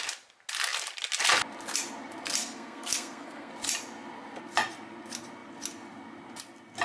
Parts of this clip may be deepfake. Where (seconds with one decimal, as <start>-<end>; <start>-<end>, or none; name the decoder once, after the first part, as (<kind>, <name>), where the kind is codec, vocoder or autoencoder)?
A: 2.4-3.5 (codec, SNAC)